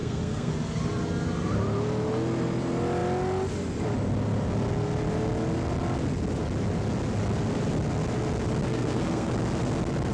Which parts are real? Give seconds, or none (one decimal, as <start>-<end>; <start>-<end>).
0.5-8.6; 9.3-10.1